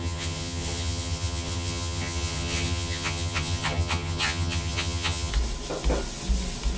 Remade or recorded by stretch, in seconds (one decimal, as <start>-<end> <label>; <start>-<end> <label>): 0.0-5.3 remade; 5.3-6.8 recorded